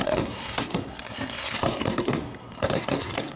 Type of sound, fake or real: fake